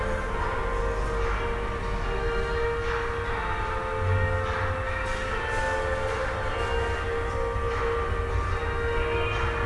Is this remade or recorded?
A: recorded